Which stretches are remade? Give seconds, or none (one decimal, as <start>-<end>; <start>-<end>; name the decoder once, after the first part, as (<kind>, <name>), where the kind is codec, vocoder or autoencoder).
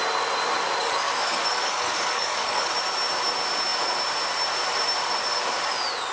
0.8-2.7 (codec, DAC)